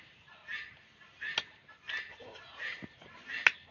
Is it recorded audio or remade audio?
recorded